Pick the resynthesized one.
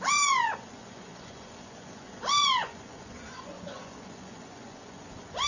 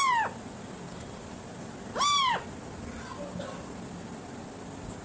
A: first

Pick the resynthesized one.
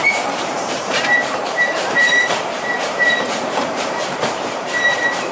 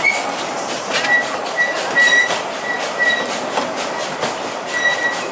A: first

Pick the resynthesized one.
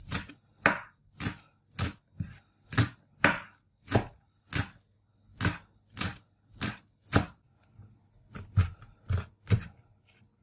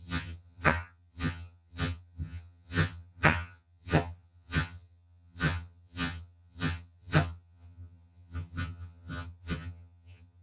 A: second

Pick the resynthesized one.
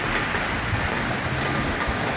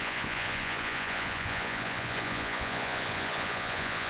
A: second